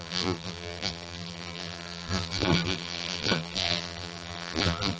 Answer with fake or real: fake